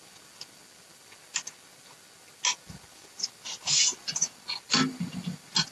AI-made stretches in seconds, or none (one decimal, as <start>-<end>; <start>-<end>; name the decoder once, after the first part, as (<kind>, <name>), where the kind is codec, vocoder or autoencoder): none